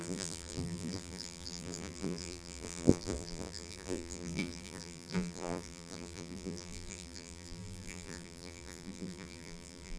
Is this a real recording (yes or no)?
no